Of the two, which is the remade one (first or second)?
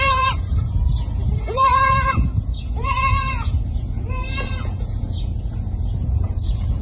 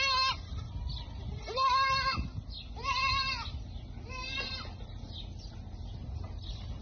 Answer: first